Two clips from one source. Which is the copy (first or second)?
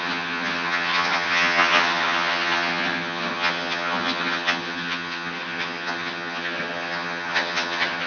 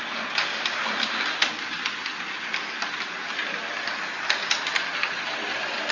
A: first